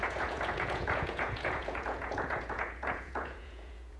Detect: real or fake fake